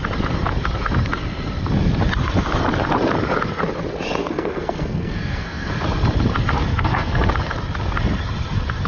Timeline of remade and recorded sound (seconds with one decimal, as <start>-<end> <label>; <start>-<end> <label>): 0.0-4.2 recorded; 4.2-5.7 remade; 5.7-6.7 recorded; 6.7-7.3 remade; 7.3-8.9 recorded

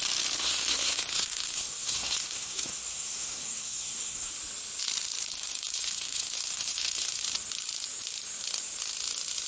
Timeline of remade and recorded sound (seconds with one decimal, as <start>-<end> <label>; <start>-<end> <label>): 0.0-0.4 recorded; 0.4-4.3 remade; 4.3-5.3 recorded; 5.3-7.2 remade; 7.2-9.5 recorded

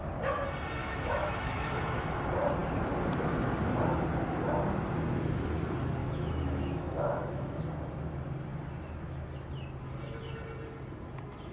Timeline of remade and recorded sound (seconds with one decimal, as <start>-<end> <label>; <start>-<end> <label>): 0.0-0.8 recorded; 0.8-2.2 remade; 2.2-6.0 recorded; 6.0-7.6 remade; 7.6-11.5 recorded

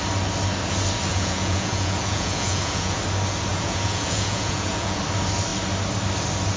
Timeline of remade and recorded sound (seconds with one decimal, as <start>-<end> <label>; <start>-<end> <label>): 0.0-1.1 recorded; 1.1-3.0 remade; 3.0-3.5 recorded; 3.5-5.0 remade; 5.0-6.6 recorded

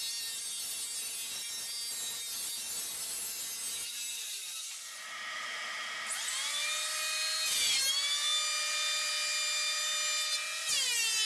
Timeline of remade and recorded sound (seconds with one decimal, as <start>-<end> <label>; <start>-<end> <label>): 0.0-11.2 recorded